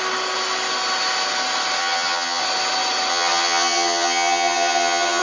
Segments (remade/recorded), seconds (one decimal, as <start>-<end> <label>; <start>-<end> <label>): 0.0-1.8 recorded; 1.8-2.4 remade; 2.4-3.1 recorded; 3.1-5.2 remade